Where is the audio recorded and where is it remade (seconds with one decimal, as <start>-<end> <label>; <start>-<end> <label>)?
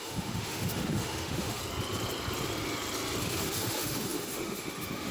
0.0-1.6 remade; 1.6-3.2 recorded; 3.2-5.1 remade